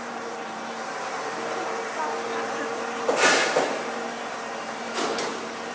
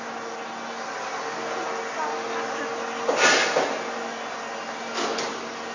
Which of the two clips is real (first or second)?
second